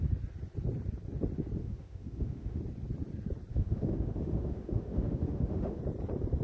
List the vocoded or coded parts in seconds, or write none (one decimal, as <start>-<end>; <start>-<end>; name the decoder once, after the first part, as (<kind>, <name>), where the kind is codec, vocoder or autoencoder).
1.6-2.6 (autoencoder, DAC-VAE); 3.5-5.8